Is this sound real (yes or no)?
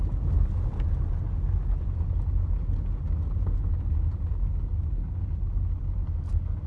yes